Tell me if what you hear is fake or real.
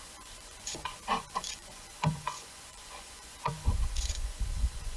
fake